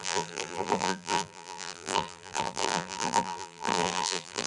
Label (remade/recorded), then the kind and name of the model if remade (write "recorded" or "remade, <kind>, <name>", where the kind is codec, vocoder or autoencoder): remade, vocoder, BigVGAN v2